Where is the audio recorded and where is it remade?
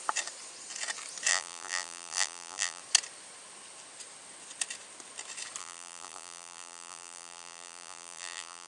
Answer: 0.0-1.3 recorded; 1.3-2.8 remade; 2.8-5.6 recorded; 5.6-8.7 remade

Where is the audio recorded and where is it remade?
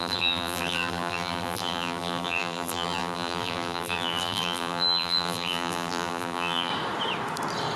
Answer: 0.0-6.7 remade; 6.7-7.8 recorded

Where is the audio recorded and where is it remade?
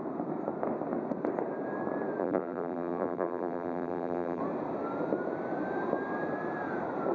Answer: 0.0-2.2 recorded; 2.2-4.4 remade; 4.4-7.1 recorded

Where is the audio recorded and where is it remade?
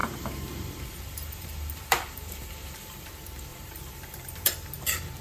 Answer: 0.0-3.1 remade; 3.1-3.5 recorded; 3.5-4.5 remade; 4.5-5.2 recorded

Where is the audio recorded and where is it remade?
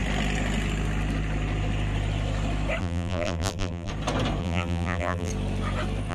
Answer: 0.0-2.8 recorded; 2.8-3.9 remade; 3.9-4.4 recorded; 4.4-5.3 remade; 5.3-6.1 recorded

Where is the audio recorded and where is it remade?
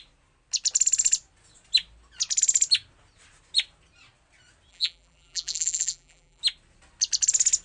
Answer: 0.0-4.7 recorded; 4.7-6.4 remade; 6.4-7.6 recorded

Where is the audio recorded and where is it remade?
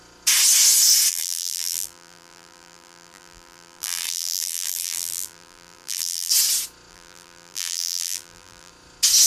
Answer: 0.0-1.1 recorded; 1.1-6.3 remade; 6.3-6.9 recorded; 6.9-8.7 remade; 8.7-9.3 recorded